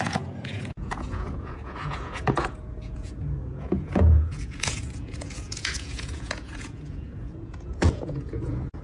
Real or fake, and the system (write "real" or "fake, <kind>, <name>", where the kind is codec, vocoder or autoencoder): fake, vocoder, Vocos